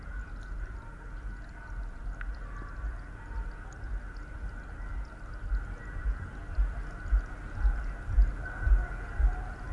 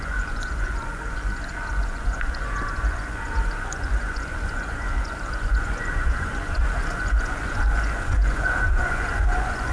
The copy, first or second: second